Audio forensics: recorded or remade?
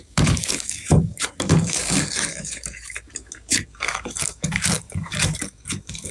remade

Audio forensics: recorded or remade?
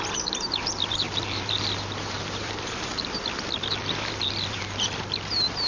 remade